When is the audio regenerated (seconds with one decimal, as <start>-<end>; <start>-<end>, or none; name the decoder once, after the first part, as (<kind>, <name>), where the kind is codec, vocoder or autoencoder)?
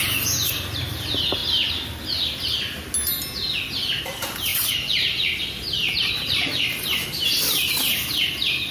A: 0.0-1.4 (vocoder, BigVGAN v2); 4.0-8.7